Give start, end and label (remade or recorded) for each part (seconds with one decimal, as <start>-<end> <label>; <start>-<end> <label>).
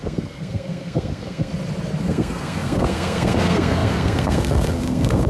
0.0-1.5 remade; 1.5-2.0 recorded; 2.0-5.3 remade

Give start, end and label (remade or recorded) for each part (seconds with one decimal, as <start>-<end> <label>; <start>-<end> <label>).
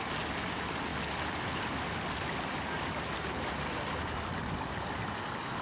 0.0-5.6 recorded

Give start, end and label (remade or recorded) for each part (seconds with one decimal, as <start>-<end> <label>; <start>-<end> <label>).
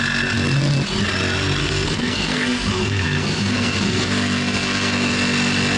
0.0-1.6 recorded; 1.6-5.1 remade; 5.1-5.8 recorded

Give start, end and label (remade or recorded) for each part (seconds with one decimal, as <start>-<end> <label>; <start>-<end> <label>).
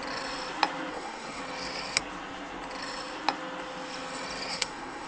0.0-0.9 recorded; 0.9-1.4 remade; 1.4-4.5 recorded; 4.5-5.1 remade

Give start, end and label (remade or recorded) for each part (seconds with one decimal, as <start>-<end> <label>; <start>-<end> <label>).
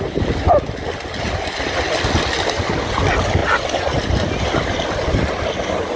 0.0-6.0 recorded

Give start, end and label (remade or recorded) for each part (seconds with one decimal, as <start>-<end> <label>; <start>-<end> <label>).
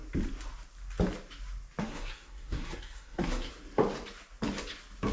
0.0-1.8 recorded; 1.8-3.5 remade; 3.5-5.1 recorded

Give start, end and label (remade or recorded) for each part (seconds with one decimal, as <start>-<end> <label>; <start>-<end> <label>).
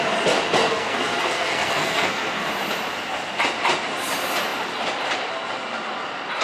0.0-0.7 recorded; 0.7-2.5 remade; 2.5-6.4 recorded